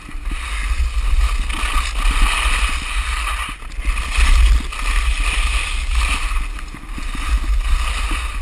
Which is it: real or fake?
real